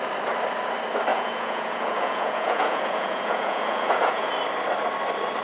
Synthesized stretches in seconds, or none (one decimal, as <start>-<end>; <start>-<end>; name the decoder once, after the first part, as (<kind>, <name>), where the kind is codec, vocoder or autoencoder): 1.1-4.3 (vocoder, Vocos)